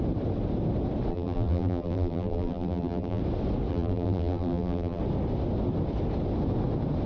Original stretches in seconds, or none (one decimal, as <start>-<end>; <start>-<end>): 0.0-1.1; 3.2-3.7; 5.0-7.1